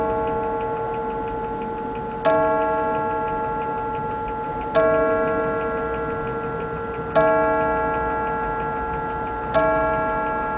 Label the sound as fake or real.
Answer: real